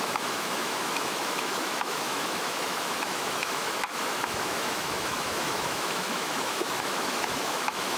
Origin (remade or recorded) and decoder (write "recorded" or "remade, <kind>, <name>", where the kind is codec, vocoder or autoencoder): remade, autoencoder, DAC-VAE